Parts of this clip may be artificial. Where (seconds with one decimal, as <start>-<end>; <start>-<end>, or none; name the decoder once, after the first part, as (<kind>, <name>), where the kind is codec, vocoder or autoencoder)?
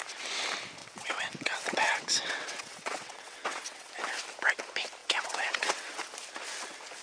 0.8-3.9 (vocoder, WaveNeXt); 5.0-6.0